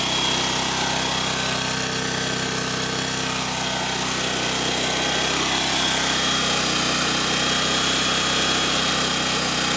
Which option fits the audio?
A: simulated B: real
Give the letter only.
B